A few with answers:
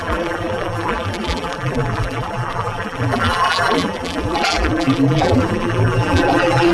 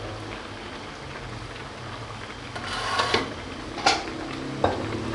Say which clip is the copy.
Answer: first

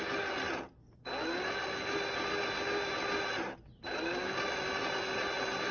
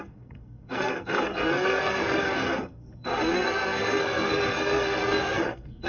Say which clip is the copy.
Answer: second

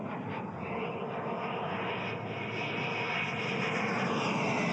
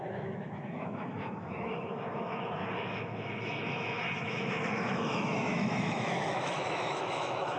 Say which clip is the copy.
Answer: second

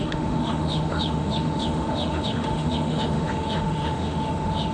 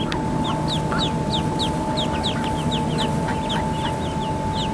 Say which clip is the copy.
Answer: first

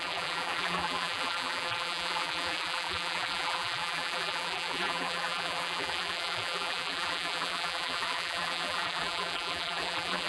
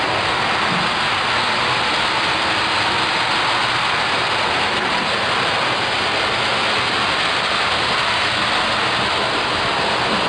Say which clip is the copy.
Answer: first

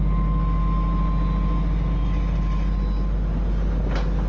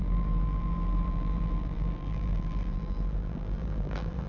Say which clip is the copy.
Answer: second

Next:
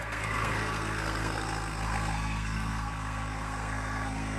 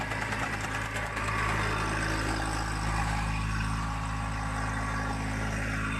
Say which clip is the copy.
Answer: first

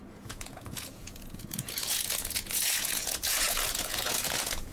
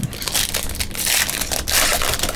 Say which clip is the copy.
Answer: first